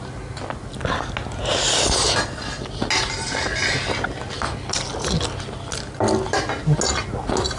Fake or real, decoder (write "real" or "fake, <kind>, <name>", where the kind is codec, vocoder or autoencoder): real